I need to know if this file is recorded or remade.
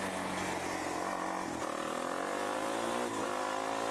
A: recorded